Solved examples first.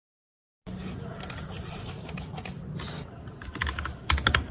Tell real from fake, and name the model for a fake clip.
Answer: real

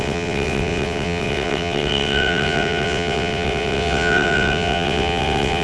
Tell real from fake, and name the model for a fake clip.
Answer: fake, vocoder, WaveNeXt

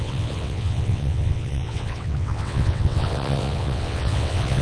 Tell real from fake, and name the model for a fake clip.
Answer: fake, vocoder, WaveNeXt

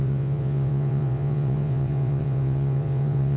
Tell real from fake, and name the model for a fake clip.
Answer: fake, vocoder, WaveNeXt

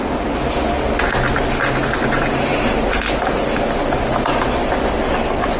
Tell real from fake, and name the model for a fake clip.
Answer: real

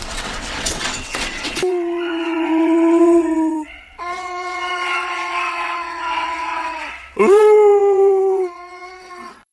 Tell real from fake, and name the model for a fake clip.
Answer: fake, vocoder, WaveNeXt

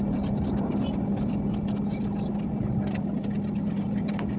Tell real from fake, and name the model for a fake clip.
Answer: real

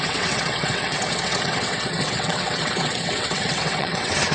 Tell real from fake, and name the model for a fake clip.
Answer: fake, vocoder, WaveNeXt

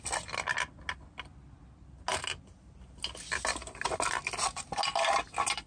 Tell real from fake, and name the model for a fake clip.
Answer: real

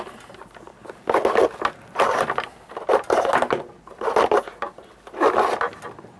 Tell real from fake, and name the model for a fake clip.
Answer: real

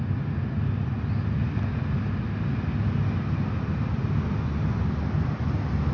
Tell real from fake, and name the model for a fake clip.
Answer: real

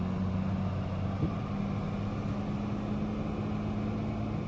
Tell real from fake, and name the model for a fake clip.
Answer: real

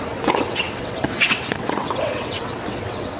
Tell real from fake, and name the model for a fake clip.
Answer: fake, vocoder, WaveNeXt